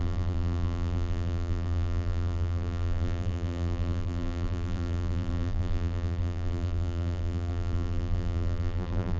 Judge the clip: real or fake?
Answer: fake